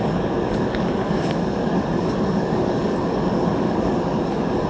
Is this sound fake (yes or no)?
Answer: yes